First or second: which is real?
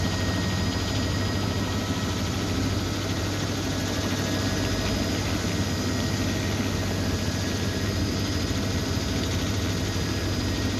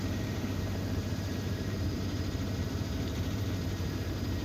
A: first